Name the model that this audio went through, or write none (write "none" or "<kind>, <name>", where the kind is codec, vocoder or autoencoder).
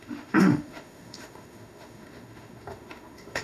autoencoder, DAC-VAE